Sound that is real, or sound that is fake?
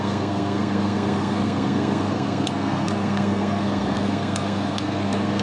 fake